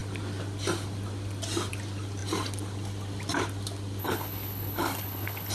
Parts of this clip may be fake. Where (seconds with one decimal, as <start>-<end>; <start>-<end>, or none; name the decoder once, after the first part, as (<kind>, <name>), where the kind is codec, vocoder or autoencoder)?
4.0-5.5 (codec, HILCodec)